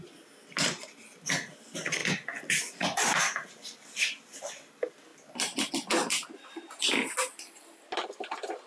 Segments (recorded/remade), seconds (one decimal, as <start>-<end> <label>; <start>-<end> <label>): 0.0-8.7 recorded